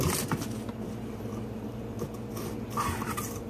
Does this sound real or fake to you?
real